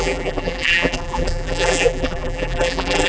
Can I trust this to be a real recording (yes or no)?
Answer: no